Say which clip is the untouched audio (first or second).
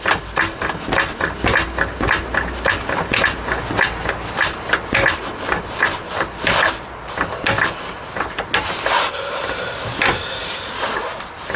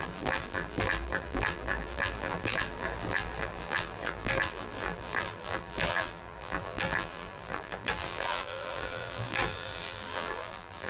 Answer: first